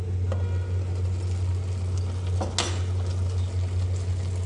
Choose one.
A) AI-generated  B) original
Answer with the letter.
B